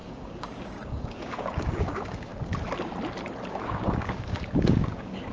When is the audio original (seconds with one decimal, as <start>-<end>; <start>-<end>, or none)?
2.3-3.5